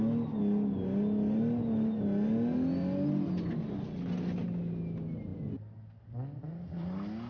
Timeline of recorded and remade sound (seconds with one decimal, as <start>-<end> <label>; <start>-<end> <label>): 0.0-7.3 recorded